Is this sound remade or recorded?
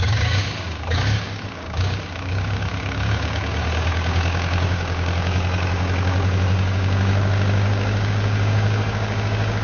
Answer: remade